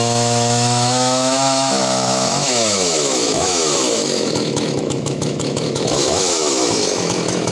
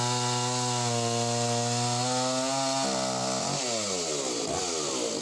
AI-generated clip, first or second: first